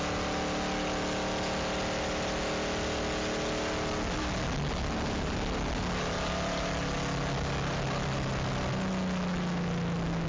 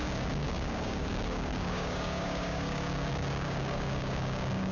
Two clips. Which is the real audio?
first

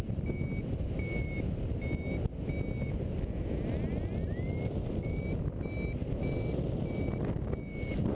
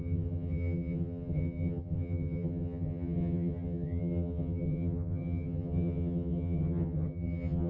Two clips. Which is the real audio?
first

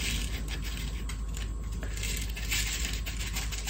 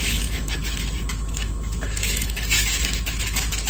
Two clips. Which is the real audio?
first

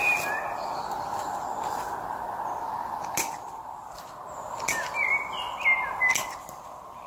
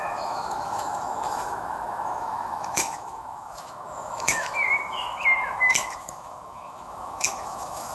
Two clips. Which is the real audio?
first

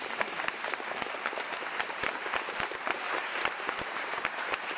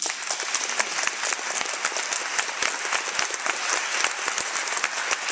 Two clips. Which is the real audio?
second